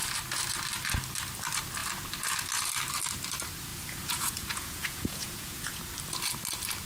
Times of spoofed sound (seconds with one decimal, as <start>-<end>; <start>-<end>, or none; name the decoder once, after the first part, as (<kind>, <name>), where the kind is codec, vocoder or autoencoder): 3.7-5.8 (vocoder, Vocos)

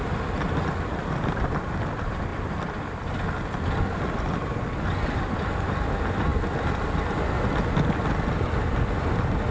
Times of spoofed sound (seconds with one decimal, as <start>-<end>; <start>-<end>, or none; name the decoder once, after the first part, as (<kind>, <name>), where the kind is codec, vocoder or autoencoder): none